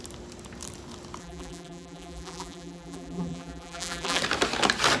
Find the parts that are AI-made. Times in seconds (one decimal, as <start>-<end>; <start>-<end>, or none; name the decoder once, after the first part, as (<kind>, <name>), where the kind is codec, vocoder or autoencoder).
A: 1.2-4.2 (vocoder, BigVGAN v2)